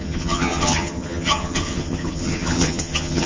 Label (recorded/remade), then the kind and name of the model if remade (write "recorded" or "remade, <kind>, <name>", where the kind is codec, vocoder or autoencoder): remade, vocoder, HiFi-GAN